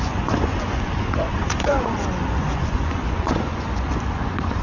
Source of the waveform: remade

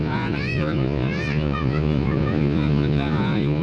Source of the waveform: remade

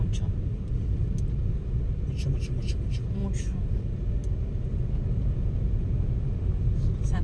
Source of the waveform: recorded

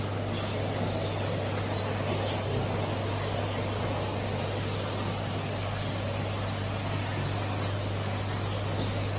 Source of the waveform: recorded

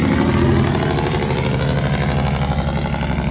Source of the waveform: recorded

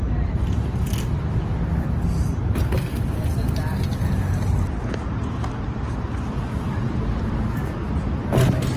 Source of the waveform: recorded